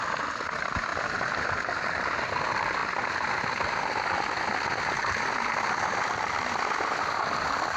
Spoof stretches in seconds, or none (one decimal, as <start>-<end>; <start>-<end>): none